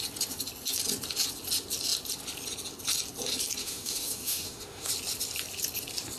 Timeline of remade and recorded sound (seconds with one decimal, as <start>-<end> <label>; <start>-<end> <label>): 0.0-3.6 recorded; 3.6-4.9 remade; 4.9-6.2 recorded